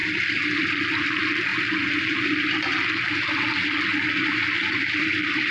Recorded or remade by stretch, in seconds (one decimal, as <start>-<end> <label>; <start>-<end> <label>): 0.0-1.5 remade; 1.5-4.8 recorded; 4.8-5.5 remade